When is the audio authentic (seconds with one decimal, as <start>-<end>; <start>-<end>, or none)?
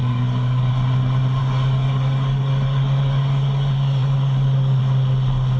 0.7-1.4; 4.8-5.6